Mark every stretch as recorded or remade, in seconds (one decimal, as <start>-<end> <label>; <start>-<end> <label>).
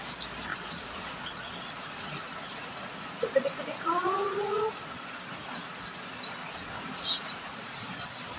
0.0-0.5 recorded; 0.5-4.9 remade; 4.9-5.4 recorded; 5.4-6.0 remade; 6.0-6.4 recorded; 6.4-8.0 remade; 8.0-8.4 recorded